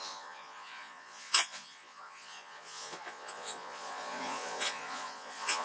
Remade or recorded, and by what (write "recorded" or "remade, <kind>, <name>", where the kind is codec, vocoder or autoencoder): remade, vocoder, Vocos